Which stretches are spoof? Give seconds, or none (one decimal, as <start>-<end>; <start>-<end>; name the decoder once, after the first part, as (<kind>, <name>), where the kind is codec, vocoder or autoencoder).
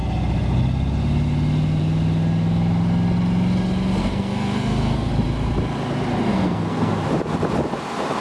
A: 4.0-5.1 (codec, SNAC); 6.3-6.9